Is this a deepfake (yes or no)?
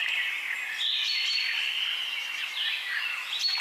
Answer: no